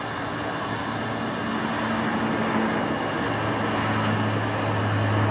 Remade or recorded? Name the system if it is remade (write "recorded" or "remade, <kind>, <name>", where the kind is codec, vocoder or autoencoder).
recorded